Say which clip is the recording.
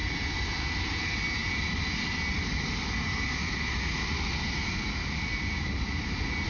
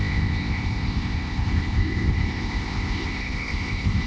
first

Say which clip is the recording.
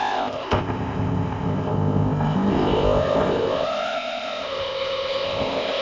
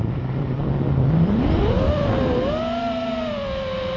second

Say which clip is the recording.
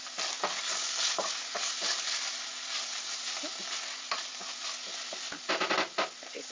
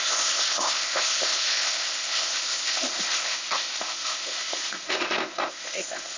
first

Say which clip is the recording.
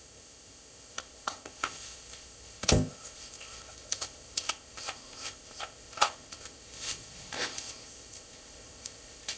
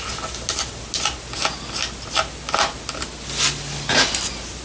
second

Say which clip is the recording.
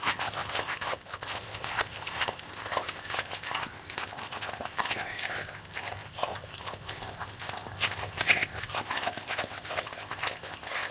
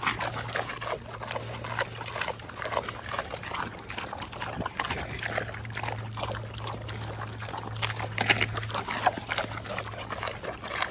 second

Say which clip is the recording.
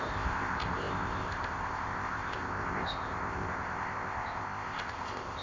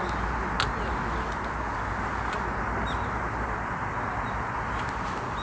second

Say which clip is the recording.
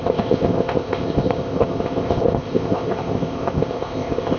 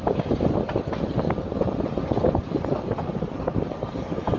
second